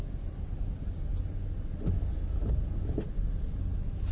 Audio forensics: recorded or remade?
recorded